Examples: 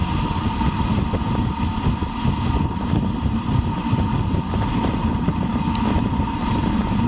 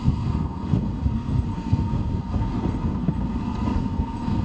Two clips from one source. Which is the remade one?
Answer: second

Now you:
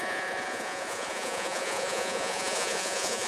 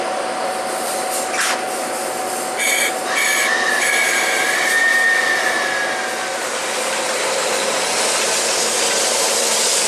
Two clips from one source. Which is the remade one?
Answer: first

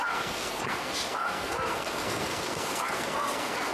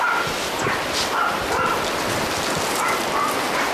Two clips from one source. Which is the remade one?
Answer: first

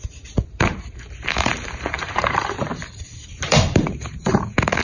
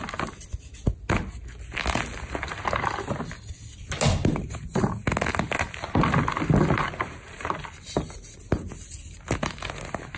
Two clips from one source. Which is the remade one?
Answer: first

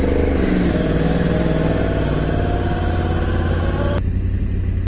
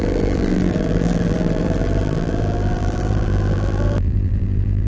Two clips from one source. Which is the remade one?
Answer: second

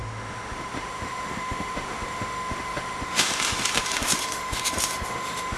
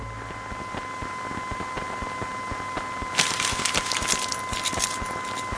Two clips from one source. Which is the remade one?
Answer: first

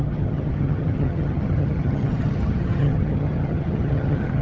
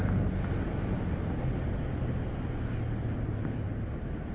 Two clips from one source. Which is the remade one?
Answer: first